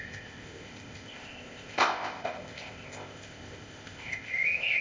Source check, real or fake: fake